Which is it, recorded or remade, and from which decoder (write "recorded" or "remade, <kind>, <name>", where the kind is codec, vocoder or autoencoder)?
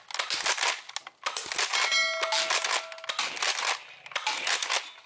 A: recorded